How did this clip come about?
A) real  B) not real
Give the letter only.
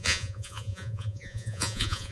B